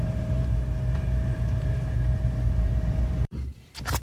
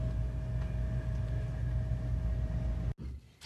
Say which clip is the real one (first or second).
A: second